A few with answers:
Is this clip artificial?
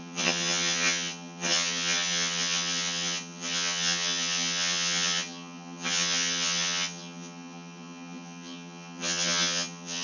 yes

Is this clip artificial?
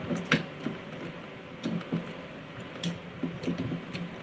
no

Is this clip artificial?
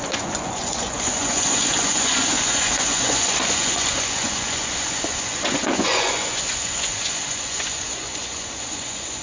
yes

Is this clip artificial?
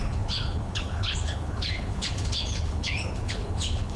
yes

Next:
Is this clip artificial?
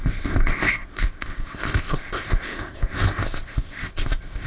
yes